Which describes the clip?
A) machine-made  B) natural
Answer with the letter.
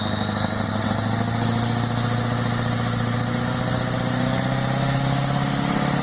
B